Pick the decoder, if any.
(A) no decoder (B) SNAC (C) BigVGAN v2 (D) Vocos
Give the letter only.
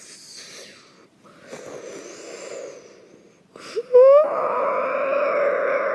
A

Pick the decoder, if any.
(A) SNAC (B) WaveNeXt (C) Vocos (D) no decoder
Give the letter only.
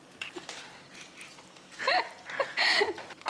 D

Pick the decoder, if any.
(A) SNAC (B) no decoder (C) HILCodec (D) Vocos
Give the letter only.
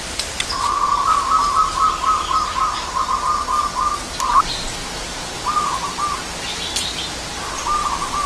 B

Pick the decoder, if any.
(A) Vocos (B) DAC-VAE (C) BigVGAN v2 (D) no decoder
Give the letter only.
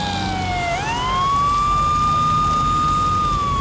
D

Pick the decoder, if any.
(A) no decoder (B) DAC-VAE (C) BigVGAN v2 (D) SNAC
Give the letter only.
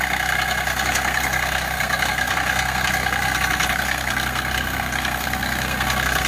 D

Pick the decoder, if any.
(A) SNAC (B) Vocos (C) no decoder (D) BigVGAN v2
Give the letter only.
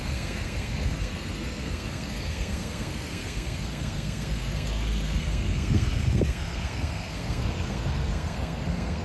A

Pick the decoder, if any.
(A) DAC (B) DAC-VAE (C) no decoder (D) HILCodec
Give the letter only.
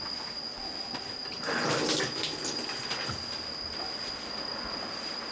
C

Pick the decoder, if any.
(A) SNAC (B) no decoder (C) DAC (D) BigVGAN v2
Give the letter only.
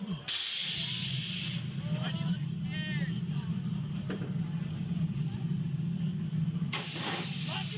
B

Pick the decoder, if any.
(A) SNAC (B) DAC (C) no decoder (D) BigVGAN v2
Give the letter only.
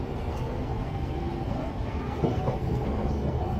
A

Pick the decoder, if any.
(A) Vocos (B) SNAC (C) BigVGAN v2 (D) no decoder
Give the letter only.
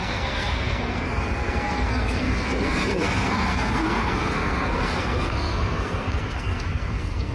B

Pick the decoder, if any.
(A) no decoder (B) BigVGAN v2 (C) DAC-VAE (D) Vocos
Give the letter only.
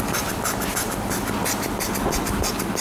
B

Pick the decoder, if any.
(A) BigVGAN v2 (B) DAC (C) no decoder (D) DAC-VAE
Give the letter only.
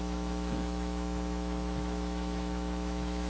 D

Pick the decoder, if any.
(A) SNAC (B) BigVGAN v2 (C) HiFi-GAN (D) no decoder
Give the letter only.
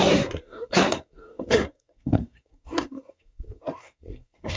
A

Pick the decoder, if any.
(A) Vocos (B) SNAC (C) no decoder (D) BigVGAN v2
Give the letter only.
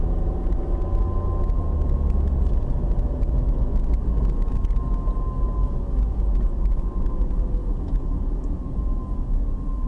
C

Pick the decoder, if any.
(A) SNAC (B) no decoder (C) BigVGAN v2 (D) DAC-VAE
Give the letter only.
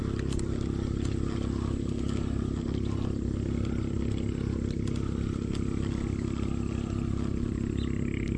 B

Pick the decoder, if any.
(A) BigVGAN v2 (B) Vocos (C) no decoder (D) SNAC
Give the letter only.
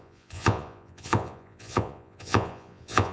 B